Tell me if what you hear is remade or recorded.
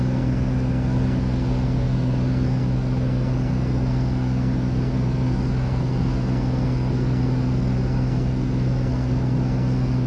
remade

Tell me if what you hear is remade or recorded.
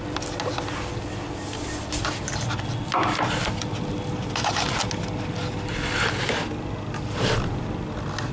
recorded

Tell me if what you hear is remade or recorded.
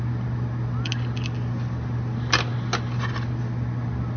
recorded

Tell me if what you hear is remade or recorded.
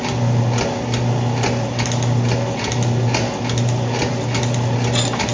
recorded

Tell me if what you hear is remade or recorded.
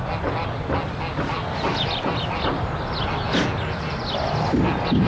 recorded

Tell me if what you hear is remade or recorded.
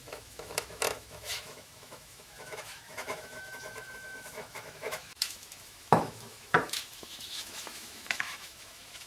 remade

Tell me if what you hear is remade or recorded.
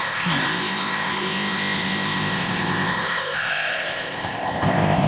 remade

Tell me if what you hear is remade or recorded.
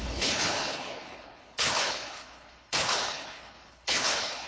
remade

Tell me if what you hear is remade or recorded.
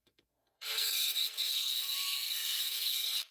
remade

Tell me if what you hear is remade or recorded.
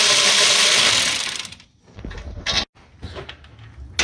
recorded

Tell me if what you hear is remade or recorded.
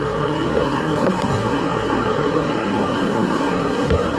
remade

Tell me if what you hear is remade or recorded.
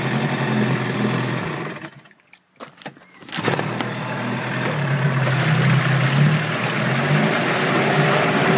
recorded